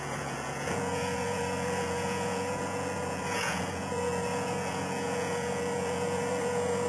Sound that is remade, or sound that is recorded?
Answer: remade